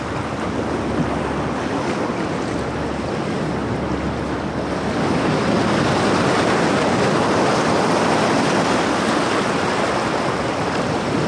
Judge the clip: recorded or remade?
recorded